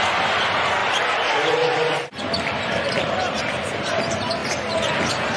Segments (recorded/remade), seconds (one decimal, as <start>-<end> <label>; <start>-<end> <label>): 0.0-0.8 recorded; 0.8-4.0 remade; 4.0-4.4 recorded; 4.4-5.4 remade